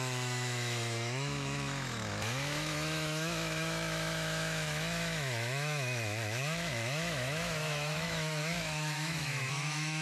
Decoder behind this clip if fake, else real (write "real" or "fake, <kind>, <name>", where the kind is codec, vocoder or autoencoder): fake, autoencoder, DAC-VAE